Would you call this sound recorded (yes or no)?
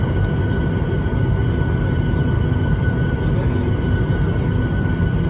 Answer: yes